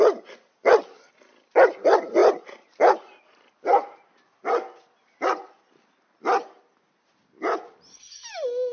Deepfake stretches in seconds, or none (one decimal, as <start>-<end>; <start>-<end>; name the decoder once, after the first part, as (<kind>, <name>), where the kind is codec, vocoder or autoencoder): none